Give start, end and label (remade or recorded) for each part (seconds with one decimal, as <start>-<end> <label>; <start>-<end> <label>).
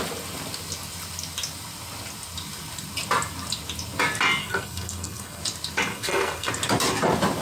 0.0-4.4 recorded; 4.4-5.4 remade; 5.4-5.9 recorded; 5.9-6.5 remade; 6.5-7.4 recorded